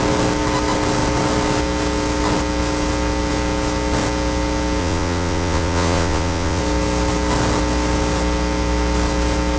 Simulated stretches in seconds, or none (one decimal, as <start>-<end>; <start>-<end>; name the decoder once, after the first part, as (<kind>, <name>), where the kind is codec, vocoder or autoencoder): 4.8-6.6 (vocoder, Vocos)